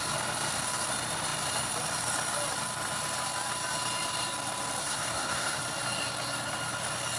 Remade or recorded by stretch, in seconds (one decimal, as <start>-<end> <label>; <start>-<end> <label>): 0.0-4.8 recorded; 4.8-5.6 remade; 5.6-7.2 recorded